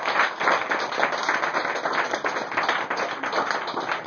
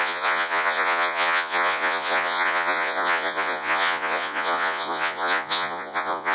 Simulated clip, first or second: second